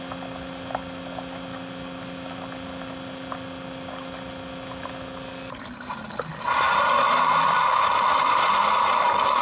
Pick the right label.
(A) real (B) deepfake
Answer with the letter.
A